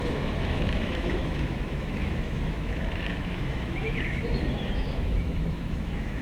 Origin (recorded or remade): remade